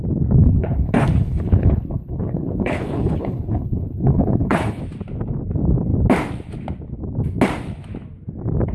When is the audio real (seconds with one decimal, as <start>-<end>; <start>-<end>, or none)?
0.0-0.4; 4.8-8.7